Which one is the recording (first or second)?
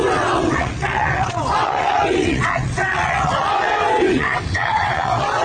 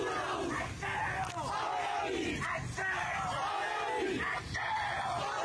second